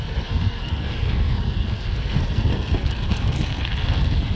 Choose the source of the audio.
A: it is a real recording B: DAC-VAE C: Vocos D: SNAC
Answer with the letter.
D